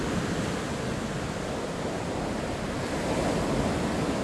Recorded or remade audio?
recorded